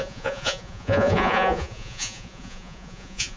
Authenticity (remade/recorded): remade